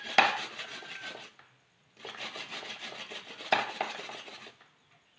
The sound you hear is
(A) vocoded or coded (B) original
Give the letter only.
B